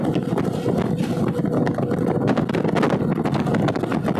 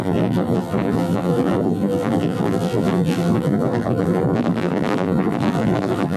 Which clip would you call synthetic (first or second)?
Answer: second